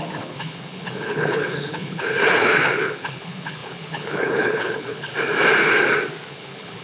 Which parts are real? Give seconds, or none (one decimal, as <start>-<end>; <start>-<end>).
5.1-6.3